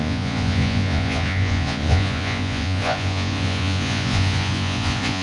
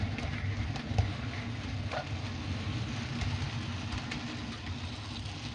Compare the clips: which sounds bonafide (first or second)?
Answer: second